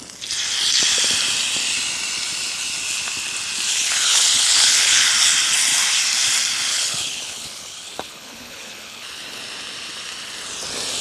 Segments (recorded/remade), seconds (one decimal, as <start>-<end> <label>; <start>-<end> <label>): 0.0-3.7 recorded; 3.7-5.1 remade; 5.1-6.7 recorded; 6.7-9.4 remade; 9.4-11.0 recorded